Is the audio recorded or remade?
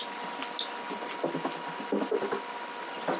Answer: recorded